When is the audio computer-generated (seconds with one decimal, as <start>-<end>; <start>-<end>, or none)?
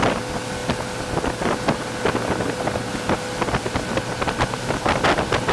none